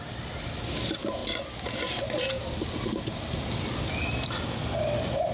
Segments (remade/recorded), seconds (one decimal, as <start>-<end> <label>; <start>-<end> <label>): 0.0-5.3 recorded